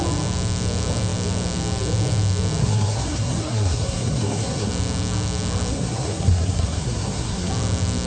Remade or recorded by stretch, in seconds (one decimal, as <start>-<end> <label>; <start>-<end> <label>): 0.0-2.6 recorded; 2.6-4.7 remade; 4.7-5.7 recorded; 5.7-7.5 remade; 7.5-8.1 recorded